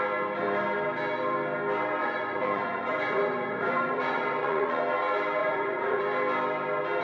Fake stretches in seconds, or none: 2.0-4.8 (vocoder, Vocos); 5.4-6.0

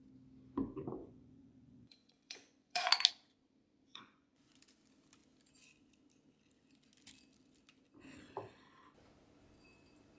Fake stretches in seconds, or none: 1.0-2.9 (vocoder, Vocos); 3.9-4.5

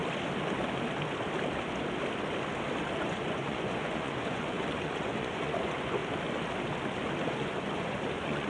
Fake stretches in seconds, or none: 3.0-6.0 (vocoder, Vocos); 7.3-8.5

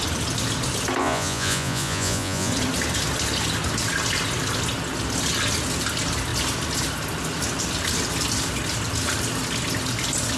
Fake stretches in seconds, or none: 1.0-2.5 (vocoder, Vocos)

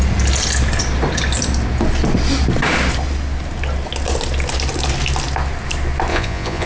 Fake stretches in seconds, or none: 6.1-6.7 (vocoder, Vocos)

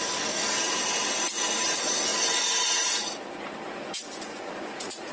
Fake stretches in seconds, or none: 4.0-5.1 (vocoder, Vocos)

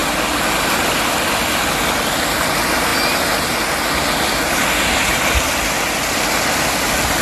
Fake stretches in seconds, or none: none